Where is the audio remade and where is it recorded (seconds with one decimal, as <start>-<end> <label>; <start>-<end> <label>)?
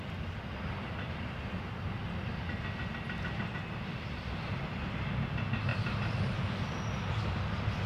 0.0-5.7 recorded; 5.7-6.4 remade; 6.4-7.9 recorded